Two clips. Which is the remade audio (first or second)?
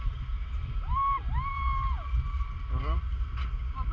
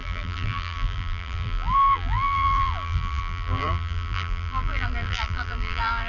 second